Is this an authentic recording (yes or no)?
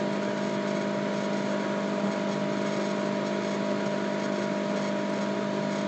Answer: yes